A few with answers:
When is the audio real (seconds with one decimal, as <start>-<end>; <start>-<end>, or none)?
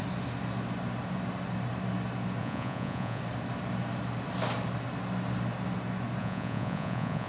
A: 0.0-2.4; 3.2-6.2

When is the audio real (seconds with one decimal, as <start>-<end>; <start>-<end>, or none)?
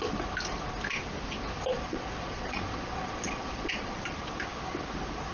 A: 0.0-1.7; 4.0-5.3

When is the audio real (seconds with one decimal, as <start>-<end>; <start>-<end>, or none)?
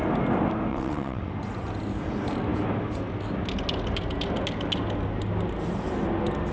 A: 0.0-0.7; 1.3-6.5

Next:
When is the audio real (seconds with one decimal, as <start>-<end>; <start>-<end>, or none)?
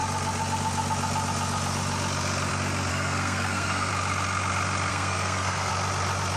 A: 0.0-2.9; 3.9-4.9; 5.7-6.4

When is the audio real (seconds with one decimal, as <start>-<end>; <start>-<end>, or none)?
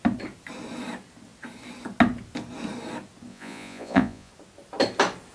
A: 0.0-3.3; 4.3-5.3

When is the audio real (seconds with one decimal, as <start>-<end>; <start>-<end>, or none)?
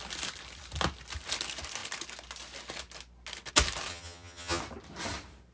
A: 0.0-3.9; 4.6-5.5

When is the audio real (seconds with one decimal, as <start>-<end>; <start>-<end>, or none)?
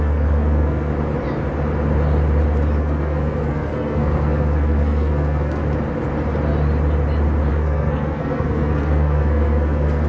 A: 0.9-2.8; 5.6-7.5